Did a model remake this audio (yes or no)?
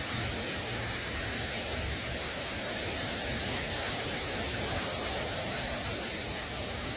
no